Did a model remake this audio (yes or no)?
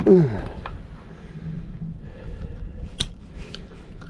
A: yes